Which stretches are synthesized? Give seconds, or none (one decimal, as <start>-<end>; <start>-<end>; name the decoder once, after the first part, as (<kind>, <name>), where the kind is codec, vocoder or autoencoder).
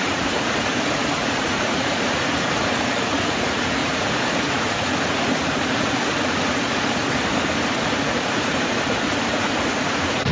0.0-10.3 (vocoder, Vocos)